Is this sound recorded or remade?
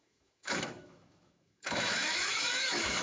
remade